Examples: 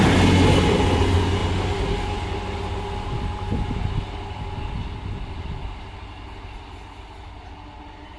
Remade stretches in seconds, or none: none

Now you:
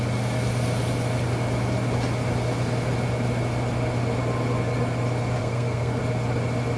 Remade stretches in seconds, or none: 5.4-6.0

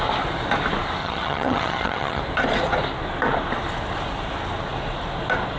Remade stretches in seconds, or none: 1.0-2.2

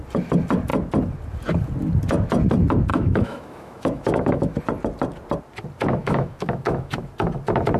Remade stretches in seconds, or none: 2.9-4.6; 6.0-7.1

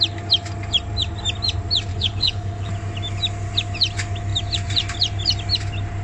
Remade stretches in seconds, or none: 1.9-2.7

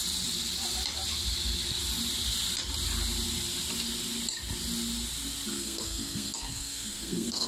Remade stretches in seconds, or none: 5.5-7.5

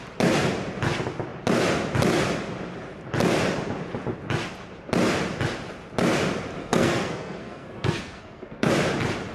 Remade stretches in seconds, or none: 6.6-8.7

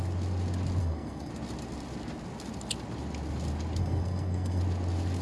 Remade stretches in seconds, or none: 0.8-1.3; 3.8-4.6